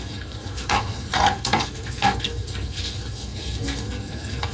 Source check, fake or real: fake